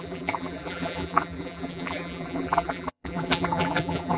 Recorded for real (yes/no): no